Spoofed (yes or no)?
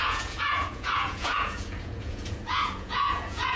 yes